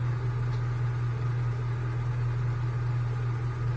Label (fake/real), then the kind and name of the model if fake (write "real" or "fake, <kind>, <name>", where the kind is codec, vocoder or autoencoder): real